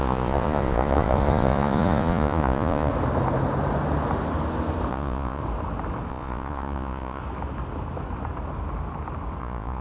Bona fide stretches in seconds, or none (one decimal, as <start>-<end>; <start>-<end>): 2.9-4.9; 5.4-6.1; 7.2-9.4